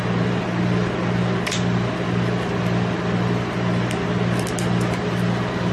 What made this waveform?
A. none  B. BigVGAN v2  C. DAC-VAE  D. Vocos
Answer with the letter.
A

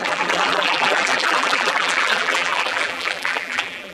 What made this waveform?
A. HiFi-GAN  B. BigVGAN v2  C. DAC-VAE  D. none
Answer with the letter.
B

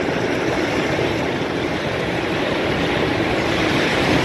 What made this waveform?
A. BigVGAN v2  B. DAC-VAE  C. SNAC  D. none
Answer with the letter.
A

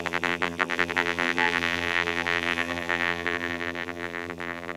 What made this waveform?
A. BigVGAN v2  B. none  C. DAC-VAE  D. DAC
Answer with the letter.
A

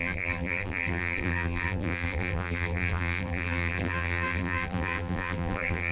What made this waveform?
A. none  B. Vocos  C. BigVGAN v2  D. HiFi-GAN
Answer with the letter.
C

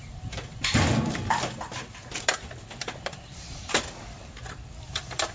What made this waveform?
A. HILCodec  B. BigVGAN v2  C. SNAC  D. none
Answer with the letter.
B